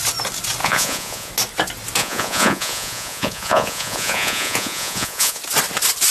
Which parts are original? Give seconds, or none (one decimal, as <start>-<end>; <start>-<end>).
0.0-0.6; 1.3-2.0; 5.4-6.1